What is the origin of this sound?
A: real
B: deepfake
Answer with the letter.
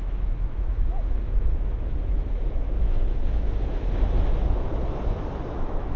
B